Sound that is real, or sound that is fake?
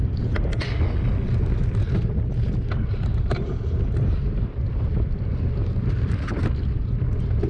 real